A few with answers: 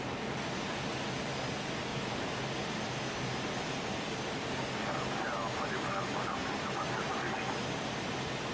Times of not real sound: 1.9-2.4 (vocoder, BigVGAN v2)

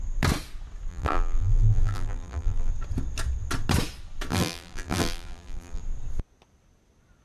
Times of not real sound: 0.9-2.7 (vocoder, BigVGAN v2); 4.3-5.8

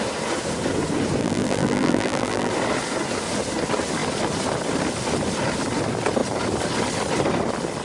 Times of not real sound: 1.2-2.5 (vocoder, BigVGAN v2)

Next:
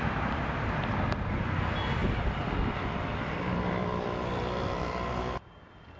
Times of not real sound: 0.0-6.0 (vocoder, BigVGAN v2)

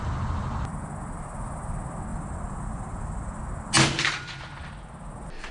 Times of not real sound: 2.1-3.4 (vocoder, BigVGAN v2)

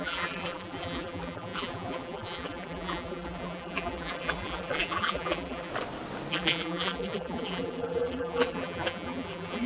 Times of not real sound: 0.0-5.7 (vocoder, BigVGAN v2); 6.3-9.7

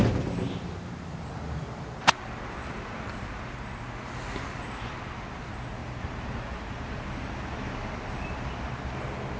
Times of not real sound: 5.8-7.0 (vocoder, BigVGAN v2)